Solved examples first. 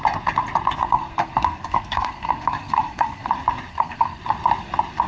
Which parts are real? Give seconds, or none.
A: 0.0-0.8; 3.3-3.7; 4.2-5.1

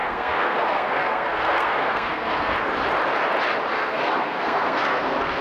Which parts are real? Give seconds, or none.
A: 2.5-3.7

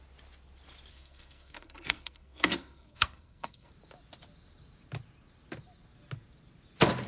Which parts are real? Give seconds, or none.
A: 0.0-0.9; 3.7-7.1

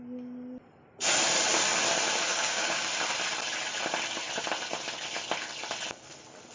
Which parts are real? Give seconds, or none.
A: 0.0-2.3; 2.9-6.5

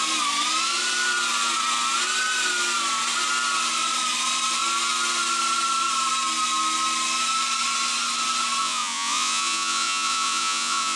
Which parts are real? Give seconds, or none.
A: 0.0-8.6

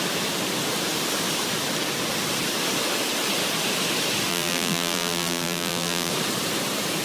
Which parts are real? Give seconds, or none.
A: 0.0-4.3; 6.1-7.0

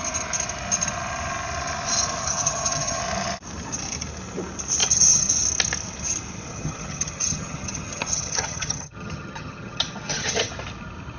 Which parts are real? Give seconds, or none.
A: 0.0-2.2; 3.0-4.8; 5.3-6.5; 10.5-11.2

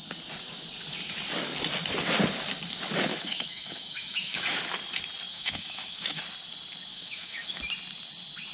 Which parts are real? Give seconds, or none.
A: 0.0-3.1; 4.6-5.3; 6.2-6.9; 7.6-8.5